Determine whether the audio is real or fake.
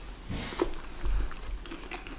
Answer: real